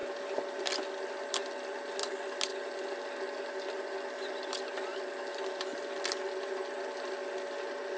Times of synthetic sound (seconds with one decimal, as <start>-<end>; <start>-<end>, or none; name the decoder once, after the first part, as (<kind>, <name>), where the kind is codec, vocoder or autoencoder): none

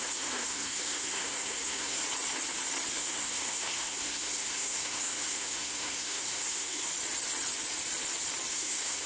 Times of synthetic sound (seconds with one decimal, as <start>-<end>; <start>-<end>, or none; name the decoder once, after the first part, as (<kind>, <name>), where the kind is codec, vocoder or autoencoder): 0.0-2.0 (codec, SNAC); 2.9-6.9; 8.5-9.1